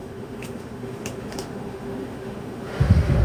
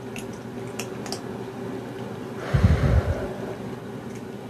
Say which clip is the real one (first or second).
second